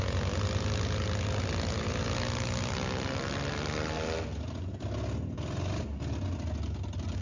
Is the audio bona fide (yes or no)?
yes